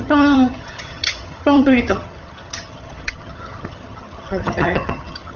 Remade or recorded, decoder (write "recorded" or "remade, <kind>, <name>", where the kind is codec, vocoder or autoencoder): remade, vocoder, HiFi-GAN